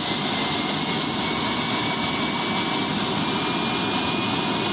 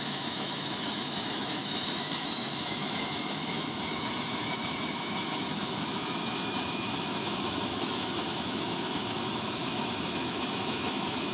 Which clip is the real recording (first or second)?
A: first